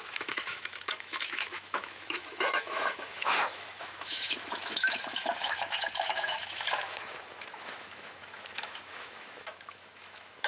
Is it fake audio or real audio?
fake